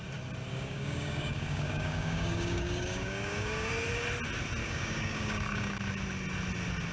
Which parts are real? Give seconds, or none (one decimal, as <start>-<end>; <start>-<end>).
0.0-0.5; 3.7-4.6; 5.8-6.9